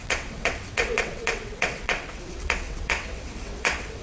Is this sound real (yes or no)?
no